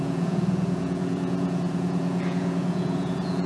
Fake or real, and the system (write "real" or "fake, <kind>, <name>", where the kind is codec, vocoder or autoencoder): fake, vocoder, Vocos